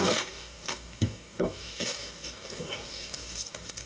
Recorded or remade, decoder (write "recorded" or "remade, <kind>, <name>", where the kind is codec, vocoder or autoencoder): remade, codec, DAC